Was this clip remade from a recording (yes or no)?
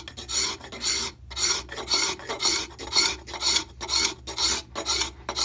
no